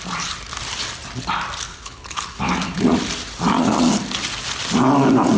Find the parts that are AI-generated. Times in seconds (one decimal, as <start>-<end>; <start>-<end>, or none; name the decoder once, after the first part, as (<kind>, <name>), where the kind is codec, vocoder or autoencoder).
1.7-2.4 (codec, HILCodec)